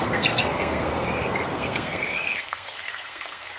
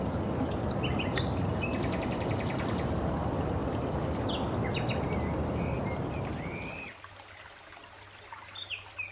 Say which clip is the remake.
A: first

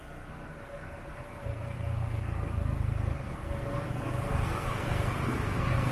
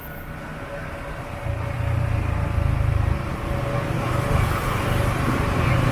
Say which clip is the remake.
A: first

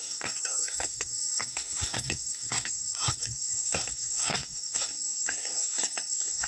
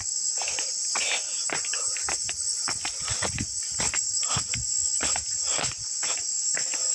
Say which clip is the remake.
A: first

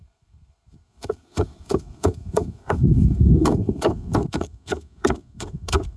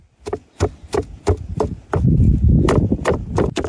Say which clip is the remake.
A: first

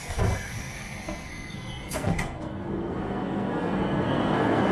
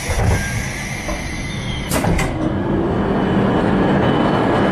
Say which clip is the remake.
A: first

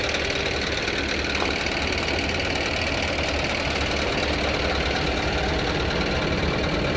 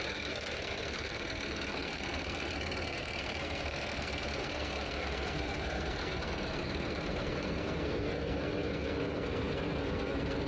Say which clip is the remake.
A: second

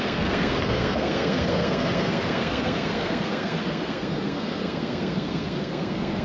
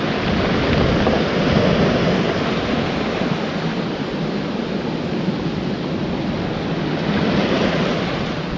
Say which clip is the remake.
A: first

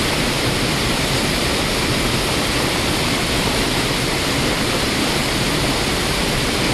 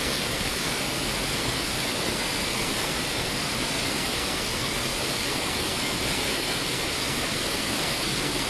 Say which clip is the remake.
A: second